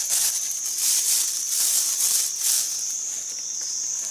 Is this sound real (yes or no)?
yes